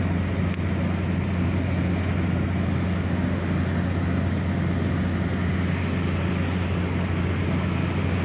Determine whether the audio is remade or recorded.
recorded